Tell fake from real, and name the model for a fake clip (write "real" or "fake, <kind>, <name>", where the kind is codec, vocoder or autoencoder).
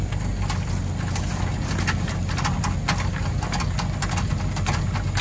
real